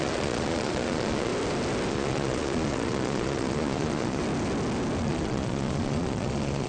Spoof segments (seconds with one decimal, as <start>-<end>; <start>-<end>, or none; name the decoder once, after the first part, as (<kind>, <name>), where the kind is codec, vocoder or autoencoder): 0.0-1.3 (vocoder, Vocos); 1.9-4.2; 5.0-6.7